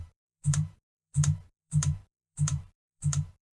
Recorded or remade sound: remade